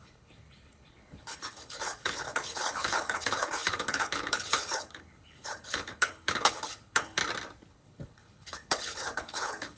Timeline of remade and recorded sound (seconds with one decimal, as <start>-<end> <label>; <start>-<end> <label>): 0.0-7.2 remade; 7.2-7.7 recorded; 7.7-9.8 remade